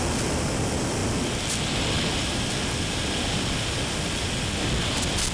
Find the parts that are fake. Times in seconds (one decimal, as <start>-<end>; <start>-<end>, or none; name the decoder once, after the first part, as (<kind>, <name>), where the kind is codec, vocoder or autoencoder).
none

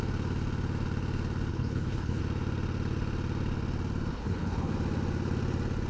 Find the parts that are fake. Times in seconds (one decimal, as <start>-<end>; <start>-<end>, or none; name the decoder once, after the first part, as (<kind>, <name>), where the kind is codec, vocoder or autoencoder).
1.5-2.2 (codec, HILCodec); 4.1-4.7

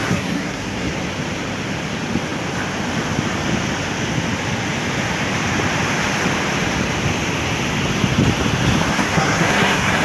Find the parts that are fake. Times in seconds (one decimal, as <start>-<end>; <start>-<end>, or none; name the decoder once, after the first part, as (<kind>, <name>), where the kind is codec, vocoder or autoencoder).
0.0-0.9 (codec, SNAC); 8.9-10.0

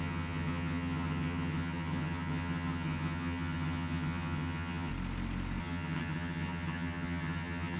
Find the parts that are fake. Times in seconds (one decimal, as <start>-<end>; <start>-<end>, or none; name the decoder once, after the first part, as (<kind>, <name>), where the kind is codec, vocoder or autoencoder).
0.0-4.9 (vocoder, HiFi-GAN); 5.6-7.8

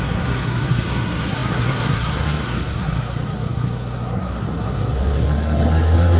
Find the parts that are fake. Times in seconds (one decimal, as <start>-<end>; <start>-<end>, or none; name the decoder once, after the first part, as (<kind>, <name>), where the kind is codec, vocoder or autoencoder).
0.0-6.2 (codec, SNAC)